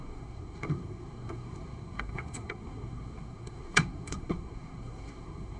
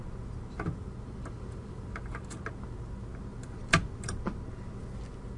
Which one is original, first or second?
second